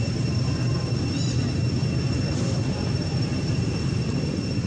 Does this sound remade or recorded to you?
remade